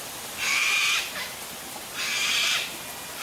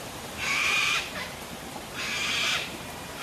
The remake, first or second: second